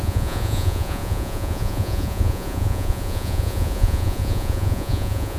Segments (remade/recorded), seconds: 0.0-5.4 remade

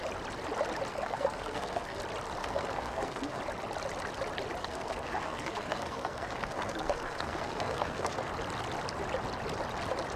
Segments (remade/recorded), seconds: 0.0-0.9 recorded; 0.9-2.0 remade; 2.0-2.4 recorded; 2.4-3.4 remade; 3.4-4.6 recorded; 4.6-8.3 remade; 8.3-10.2 recorded

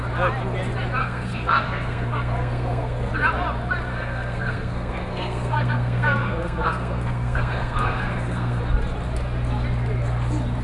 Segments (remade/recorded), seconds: 0.0-1.0 recorded; 1.0-3.1 remade; 3.1-3.9 recorded; 3.9-8.6 remade; 8.6-10.6 recorded

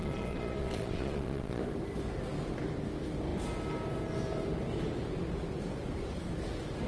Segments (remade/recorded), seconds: 0.0-1.6 remade; 1.6-6.9 recorded